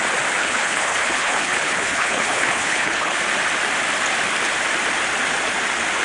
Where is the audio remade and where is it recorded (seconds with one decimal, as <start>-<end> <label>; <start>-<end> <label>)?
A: 0.0-0.4 recorded; 0.4-3.2 remade; 3.2-6.0 recorded